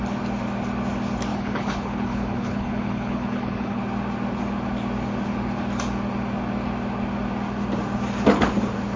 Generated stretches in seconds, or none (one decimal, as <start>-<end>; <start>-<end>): 1.3-3.8